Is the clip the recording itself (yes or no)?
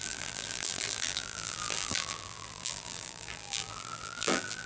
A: no